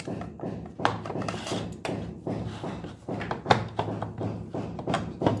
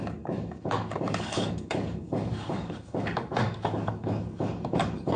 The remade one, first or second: second